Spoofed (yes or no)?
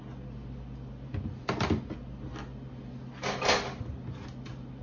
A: no